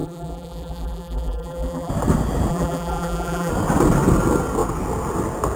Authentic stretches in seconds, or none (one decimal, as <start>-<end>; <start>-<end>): 1.9-2.5; 3.5-5.6